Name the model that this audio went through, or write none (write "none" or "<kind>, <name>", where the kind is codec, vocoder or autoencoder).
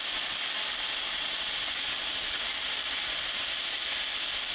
none